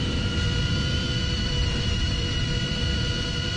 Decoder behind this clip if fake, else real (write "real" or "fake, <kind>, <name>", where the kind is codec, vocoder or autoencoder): fake, vocoder, BigVGAN v2